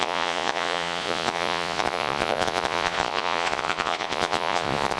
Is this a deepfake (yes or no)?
yes